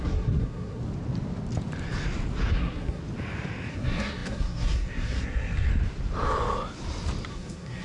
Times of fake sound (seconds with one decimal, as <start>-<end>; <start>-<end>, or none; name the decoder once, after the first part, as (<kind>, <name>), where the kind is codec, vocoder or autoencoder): 0.0-0.8 (codec, SNAC); 2.5-3.0; 3.7-5.7; 7.3-7.8